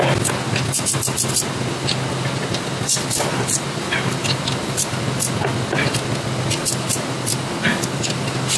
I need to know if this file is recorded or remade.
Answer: recorded